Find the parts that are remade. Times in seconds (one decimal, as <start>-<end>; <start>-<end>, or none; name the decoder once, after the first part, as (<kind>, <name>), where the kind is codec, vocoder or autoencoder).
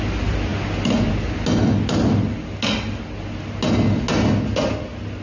none